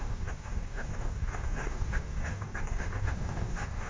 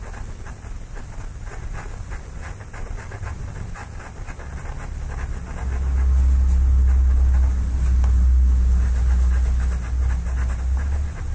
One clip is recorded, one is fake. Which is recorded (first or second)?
second